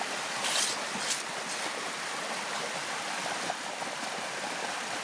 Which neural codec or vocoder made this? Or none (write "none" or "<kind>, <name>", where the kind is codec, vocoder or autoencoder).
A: none